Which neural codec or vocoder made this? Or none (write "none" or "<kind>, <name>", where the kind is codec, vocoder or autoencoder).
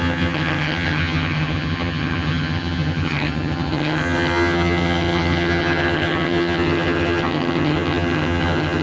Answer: vocoder, HiFi-GAN